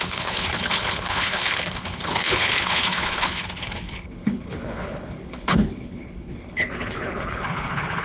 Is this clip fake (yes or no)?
yes